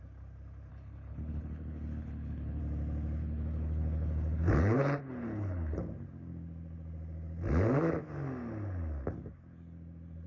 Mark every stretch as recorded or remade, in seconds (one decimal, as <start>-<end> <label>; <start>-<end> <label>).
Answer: 0.0-0.7 recorded; 0.7-2.6 remade; 2.6-3.2 recorded; 3.2-5.8 remade; 5.8-10.3 recorded